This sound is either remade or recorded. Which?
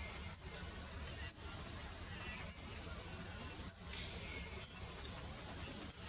recorded